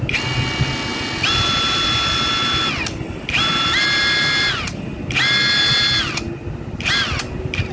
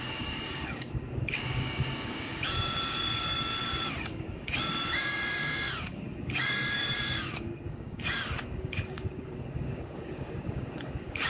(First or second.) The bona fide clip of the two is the first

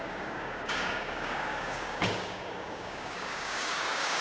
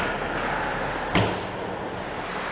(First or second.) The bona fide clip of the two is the second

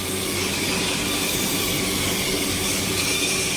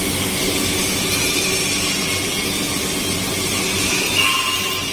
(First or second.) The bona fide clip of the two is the second